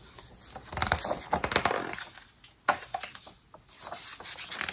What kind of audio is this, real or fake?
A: real